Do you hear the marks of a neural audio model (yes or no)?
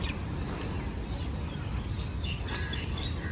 no